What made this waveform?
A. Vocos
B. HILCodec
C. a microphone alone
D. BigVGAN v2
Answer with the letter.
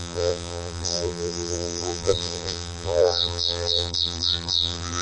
D